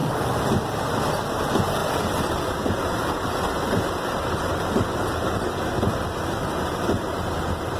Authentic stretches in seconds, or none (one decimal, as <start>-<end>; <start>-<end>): 1.1-1.8; 4.5-7.8